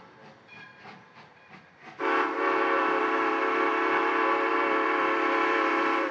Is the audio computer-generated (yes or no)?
yes